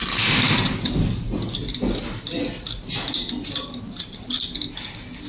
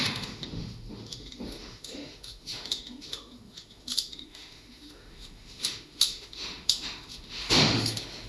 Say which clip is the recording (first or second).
first